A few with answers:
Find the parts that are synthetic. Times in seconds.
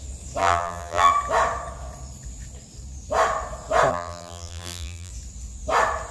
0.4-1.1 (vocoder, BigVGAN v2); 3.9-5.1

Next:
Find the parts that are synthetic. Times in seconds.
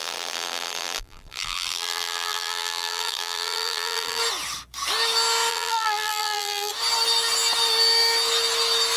0.0-4.2 (vocoder, BigVGAN v2); 5.5-6.7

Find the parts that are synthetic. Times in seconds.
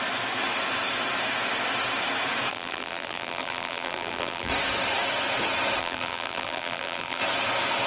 2.5-4.5 (vocoder, BigVGAN v2); 5.8-7.2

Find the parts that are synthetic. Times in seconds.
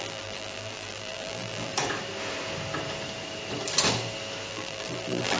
0.0-1.7 (vocoder, BigVGAN v2); 4.5-5.4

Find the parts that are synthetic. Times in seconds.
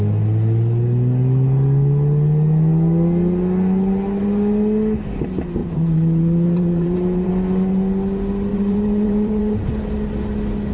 5.6-7.3 (vocoder, BigVGAN v2); 8.5-9.7